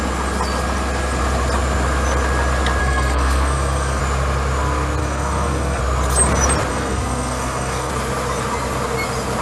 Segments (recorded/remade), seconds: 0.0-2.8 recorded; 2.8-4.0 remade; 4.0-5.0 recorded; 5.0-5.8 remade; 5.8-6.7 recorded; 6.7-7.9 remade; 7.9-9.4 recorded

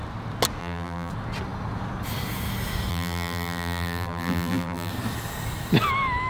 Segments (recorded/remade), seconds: 0.0-0.6 recorded; 0.6-1.1 remade; 1.1-2.9 recorded; 2.9-4.9 remade; 4.9-6.3 recorded

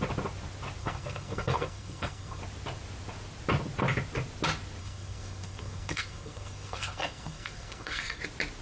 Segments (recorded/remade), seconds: 0.0-0.8 recorded; 0.8-2.4 remade; 2.4-4.8 recorded; 4.8-8.2 remade; 8.2-8.6 recorded

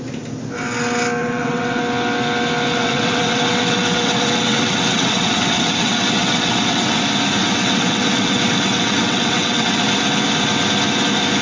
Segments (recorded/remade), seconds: 0.0-1.2 recorded; 1.2-1.8 remade; 1.8-2.7 recorded; 2.7-7.0 remade; 7.0-7.4 recorded; 7.4-9.8 remade; 9.8-11.4 recorded

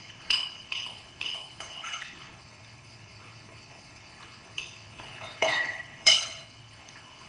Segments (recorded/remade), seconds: 0.0-7.3 remade

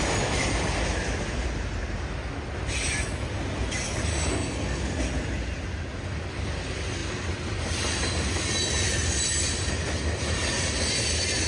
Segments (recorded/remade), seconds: 0.0-4.1 recorded; 4.1-4.8 remade; 4.8-11.5 recorded

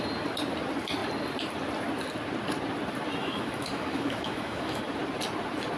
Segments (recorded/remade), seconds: 0.0-3.2 recorded; 3.2-4.8 remade; 4.8-5.8 recorded